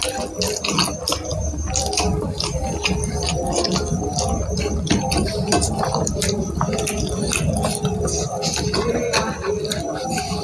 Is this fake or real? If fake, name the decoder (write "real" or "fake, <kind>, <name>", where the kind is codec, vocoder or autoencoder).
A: real